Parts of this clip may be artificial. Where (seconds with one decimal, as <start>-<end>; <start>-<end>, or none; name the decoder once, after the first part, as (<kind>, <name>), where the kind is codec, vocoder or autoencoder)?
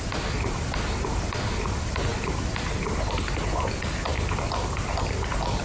2.1-5.6 (vocoder, BigVGAN v2)